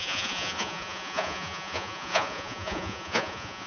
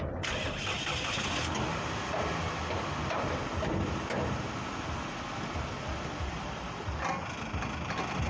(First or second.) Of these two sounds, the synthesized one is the first